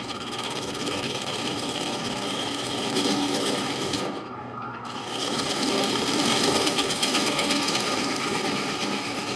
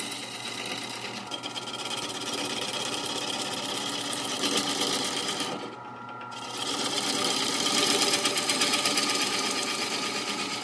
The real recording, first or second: second